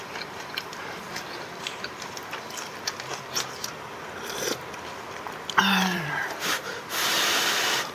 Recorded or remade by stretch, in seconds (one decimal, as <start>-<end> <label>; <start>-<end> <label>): 0.0-2.2 remade; 2.2-5.6 recorded; 5.6-7.9 remade